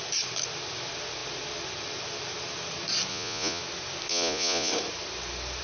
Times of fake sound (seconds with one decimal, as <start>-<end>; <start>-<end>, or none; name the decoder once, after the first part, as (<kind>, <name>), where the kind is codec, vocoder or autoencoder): 3.1-3.6 (vocoder, Vocos); 4.1-4.7